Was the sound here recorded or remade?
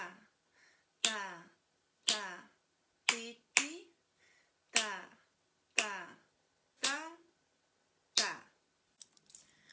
recorded